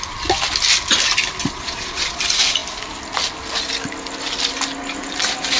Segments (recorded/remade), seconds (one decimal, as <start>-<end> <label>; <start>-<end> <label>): 0.0-1.4 recorded; 1.4-2.2 remade; 2.2-5.6 recorded